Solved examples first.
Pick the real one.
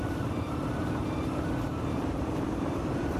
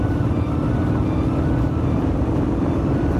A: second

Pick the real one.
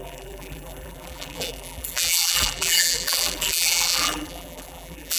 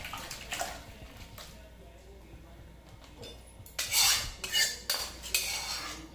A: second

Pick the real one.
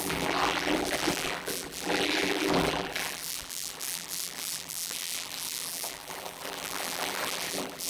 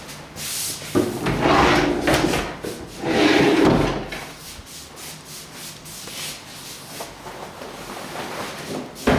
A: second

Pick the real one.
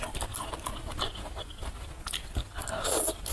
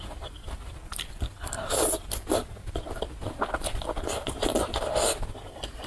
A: first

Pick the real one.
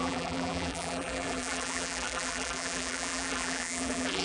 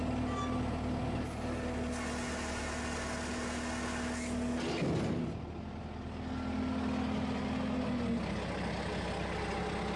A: second